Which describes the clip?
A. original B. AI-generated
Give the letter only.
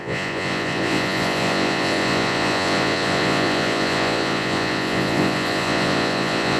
B